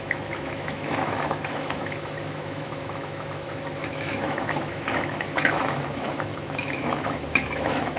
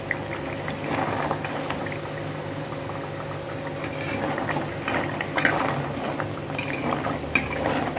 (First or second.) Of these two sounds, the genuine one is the second